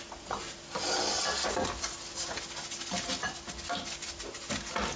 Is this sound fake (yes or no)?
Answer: no